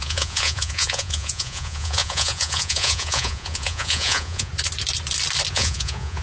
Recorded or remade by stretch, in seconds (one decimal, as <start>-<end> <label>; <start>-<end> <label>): 0.0-4.5 remade; 4.5-5.5 recorded; 5.5-6.2 remade